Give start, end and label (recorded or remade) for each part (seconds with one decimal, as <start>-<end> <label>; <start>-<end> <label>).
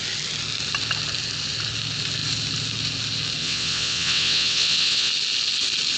0.0-3.4 recorded; 3.4-5.1 remade; 5.1-6.0 recorded